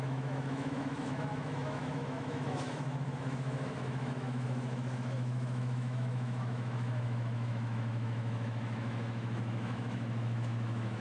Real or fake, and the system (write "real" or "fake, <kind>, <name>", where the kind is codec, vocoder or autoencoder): fake, autoencoder, DAC-VAE